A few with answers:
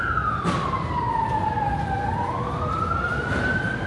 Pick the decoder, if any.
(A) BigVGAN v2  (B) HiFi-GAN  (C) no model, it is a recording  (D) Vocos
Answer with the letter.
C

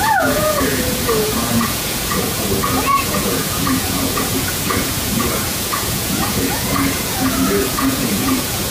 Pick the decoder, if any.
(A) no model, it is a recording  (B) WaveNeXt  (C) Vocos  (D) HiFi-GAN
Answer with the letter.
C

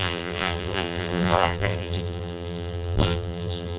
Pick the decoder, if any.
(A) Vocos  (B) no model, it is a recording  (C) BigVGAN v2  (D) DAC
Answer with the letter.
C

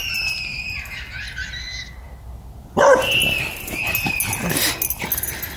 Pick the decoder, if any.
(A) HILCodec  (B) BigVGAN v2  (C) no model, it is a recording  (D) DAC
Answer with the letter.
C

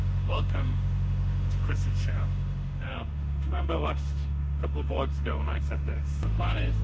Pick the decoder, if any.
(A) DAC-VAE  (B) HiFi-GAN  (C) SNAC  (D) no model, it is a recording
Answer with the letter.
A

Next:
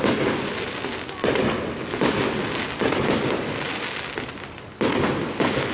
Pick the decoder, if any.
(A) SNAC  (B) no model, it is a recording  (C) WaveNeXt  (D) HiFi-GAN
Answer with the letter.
B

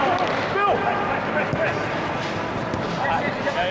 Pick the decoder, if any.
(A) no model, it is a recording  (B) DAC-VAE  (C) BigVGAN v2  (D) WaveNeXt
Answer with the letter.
A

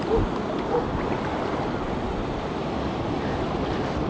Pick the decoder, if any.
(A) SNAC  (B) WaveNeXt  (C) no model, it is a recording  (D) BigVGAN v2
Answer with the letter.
C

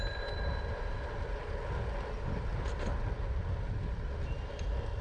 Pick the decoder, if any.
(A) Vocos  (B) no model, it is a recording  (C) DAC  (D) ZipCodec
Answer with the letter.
B